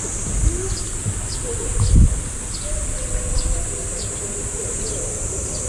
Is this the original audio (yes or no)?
yes